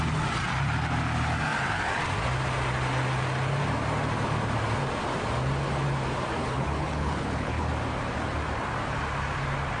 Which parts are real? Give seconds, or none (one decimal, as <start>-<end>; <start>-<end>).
0.0-6.4; 7.7-9.8